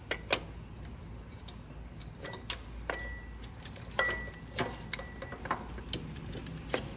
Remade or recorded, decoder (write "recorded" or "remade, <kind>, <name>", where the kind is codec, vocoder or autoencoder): recorded